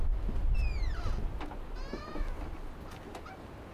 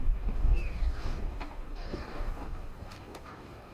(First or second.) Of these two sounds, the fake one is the second